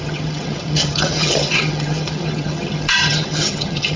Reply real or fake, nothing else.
fake